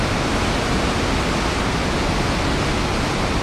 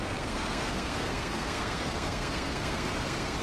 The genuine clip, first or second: first